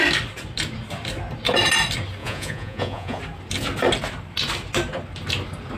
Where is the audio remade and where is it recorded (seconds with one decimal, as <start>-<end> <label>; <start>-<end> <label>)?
0.0-2.2 recorded; 2.2-3.2 remade; 3.2-5.8 recorded